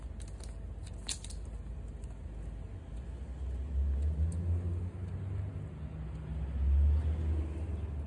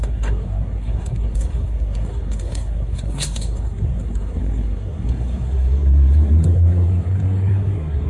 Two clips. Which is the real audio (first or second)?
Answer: first